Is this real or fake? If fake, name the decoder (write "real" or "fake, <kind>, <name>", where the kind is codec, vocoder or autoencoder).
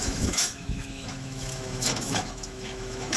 fake, autoencoder, DAC-VAE